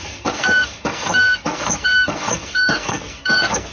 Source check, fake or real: fake